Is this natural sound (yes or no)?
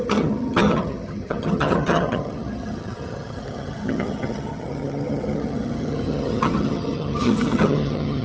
no